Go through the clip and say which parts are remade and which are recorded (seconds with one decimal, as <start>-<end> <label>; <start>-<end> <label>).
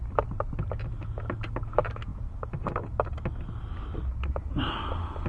0.0-5.3 recorded